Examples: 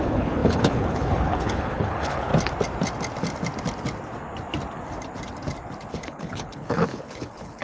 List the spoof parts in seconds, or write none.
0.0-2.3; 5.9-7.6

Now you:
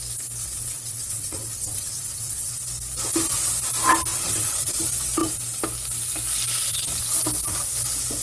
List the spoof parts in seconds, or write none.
0.4-2.5; 4.1-4.7

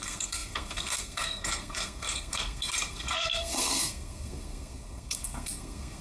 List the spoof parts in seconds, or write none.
0.0-6.0